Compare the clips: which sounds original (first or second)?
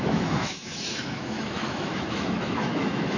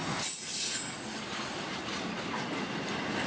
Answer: second